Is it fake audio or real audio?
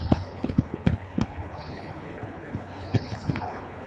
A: fake